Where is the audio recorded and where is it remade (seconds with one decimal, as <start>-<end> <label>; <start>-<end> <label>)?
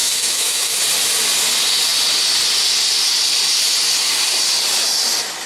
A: 0.0-0.8 remade; 0.8-5.5 recorded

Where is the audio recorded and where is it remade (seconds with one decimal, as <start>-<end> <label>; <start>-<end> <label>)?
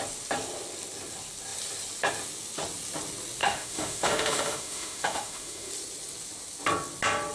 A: 0.0-3.4 recorded; 3.4-5.7 remade; 5.7-7.3 recorded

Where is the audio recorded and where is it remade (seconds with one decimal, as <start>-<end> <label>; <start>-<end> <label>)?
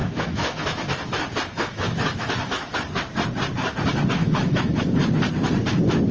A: 0.0-2.8 remade; 2.8-4.2 recorded; 4.2-4.8 remade; 4.8-6.1 recorded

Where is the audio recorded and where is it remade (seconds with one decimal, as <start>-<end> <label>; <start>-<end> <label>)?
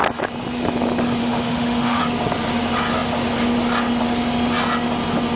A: 0.0-1.2 recorded; 1.2-2.0 remade; 2.0-5.4 recorded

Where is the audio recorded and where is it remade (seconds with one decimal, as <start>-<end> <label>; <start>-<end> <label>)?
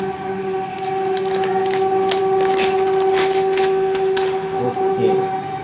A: 0.0-3.2 recorded; 3.2-4.6 remade; 4.6-5.6 recorded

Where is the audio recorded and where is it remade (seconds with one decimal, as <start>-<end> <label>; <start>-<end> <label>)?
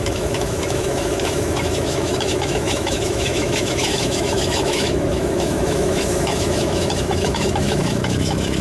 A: 0.0-8.6 remade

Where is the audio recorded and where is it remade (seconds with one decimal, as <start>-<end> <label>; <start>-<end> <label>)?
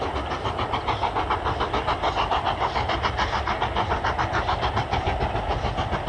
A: 0.0-6.1 recorded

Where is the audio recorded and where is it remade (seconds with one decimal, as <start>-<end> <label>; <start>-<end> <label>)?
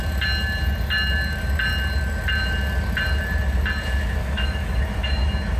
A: 0.0-4.2 recorded; 4.2-4.8 remade; 4.8-5.6 recorded